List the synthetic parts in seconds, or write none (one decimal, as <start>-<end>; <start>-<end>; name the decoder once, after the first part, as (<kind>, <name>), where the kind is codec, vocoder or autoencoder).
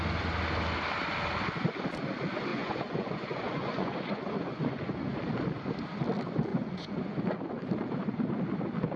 2.5-5.2 (vocoder, Vocos); 6.5-7.2